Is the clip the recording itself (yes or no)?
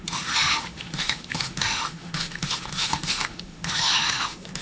no